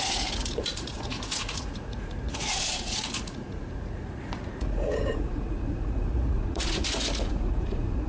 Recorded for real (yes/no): no